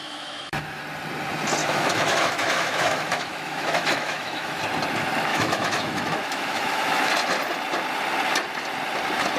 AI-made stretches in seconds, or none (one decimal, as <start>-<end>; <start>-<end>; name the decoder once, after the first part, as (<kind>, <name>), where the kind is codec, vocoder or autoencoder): 0.0-0.8 (autoencoder, DAC-VAE); 1.6-4.6; 5.3-7.1